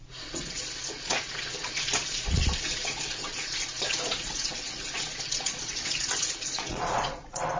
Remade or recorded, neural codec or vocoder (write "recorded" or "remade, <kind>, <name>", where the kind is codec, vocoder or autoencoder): remade, vocoder, Vocos